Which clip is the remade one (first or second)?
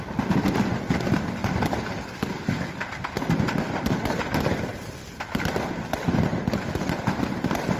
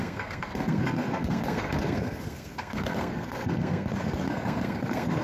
second